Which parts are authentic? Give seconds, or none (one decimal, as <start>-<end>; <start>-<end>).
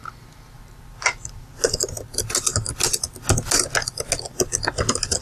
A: 0.0-5.2